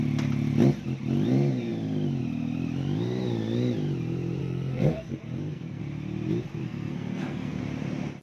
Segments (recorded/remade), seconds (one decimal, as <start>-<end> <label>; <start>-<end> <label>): 0.0-4.4 recorded; 4.4-5.8 remade; 5.8-6.6 recorded; 6.6-7.6 remade; 7.6-8.2 recorded